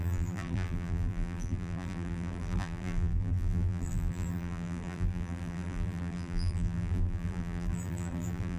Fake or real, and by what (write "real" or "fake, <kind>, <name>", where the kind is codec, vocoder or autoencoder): fake, vocoder, BigVGAN v2